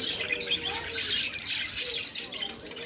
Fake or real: real